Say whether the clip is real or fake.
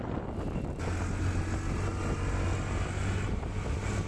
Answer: real